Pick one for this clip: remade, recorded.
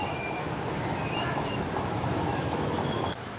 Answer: remade